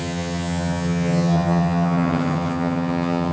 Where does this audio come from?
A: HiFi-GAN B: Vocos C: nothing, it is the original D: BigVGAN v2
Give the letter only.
A